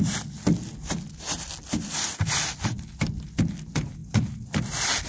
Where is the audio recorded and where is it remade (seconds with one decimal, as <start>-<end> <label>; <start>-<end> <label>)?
0.0-5.1 recorded